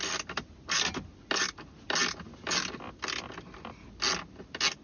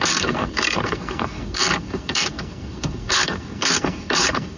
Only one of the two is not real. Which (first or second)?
second